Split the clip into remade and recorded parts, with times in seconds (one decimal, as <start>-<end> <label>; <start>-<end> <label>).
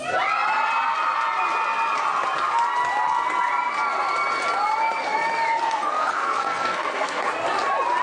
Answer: 0.0-5.6 recorded; 5.6-7.3 remade; 7.3-8.0 recorded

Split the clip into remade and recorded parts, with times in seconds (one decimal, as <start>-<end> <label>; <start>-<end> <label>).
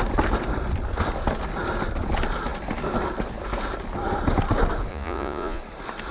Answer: 0.0-4.9 recorded; 4.9-5.6 remade; 5.6-6.1 recorded